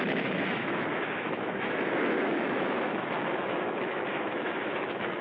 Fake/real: fake